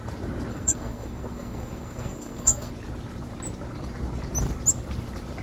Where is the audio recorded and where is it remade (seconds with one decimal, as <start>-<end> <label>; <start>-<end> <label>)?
0.0-0.5 recorded; 0.5-2.7 remade; 2.7-5.4 recorded